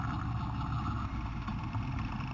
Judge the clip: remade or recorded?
recorded